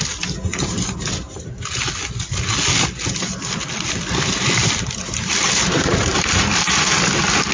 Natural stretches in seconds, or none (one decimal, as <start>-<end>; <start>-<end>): 0.0-0.5; 1.8-4.6; 7.1-7.5